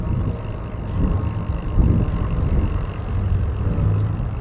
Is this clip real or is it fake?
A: real